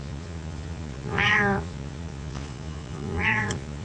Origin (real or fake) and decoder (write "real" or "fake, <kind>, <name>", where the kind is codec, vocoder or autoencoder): fake, vocoder, Vocos